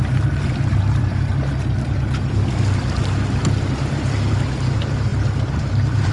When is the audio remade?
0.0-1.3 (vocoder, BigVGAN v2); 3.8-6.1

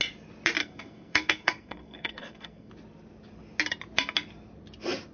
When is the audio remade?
0.6-2.7 (codec, SNAC)

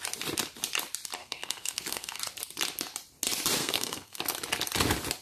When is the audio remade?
1.2-2.2 (codec, SNAC); 3.6-4.2